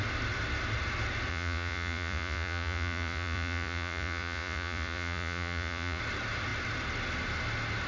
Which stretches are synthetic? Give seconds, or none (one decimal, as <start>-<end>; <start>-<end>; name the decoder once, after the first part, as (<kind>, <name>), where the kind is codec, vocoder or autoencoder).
1.3-6.0 (vocoder, Vocos)